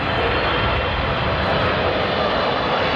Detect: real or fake real